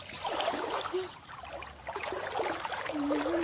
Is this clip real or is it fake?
fake